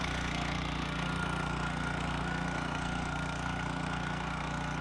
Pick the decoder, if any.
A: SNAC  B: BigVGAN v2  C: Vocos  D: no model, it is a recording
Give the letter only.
A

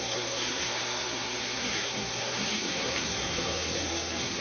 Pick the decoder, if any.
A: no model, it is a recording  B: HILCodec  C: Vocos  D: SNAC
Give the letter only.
D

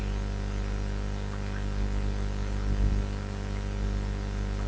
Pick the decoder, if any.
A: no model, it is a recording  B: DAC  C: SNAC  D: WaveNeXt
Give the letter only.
A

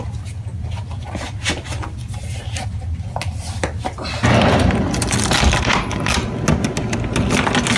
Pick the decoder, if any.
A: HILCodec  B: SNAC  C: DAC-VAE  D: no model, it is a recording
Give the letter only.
D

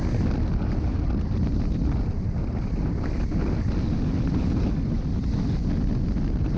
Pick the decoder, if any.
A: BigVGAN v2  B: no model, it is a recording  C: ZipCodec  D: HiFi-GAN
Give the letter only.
B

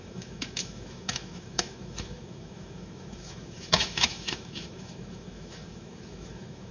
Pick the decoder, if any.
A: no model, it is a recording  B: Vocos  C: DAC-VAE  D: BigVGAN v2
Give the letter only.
C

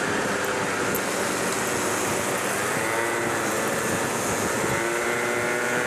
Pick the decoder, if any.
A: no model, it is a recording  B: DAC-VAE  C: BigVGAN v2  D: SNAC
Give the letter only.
A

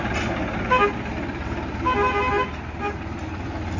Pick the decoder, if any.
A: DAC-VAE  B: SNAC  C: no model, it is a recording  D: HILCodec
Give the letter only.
C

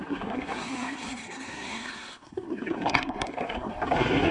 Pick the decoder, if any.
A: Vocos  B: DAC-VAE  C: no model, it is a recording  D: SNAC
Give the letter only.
D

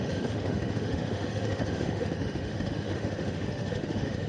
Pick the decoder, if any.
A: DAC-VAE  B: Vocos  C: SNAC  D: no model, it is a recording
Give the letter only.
A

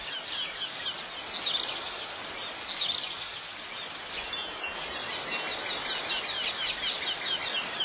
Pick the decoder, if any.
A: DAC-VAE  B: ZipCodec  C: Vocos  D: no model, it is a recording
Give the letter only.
D